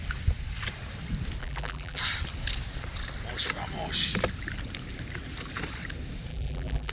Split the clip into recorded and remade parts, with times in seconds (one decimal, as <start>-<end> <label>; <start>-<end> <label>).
0.0-1.4 recorded; 1.4-2.0 remade; 2.0-6.3 recorded; 6.3-6.9 remade